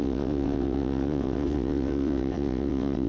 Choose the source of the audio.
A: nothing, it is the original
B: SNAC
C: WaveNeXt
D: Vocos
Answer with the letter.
C